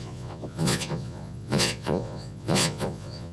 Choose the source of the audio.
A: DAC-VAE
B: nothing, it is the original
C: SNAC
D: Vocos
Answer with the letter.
D